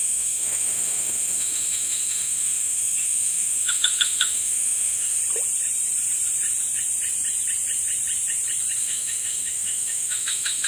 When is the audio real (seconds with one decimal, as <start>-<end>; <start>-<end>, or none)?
5.2-8.8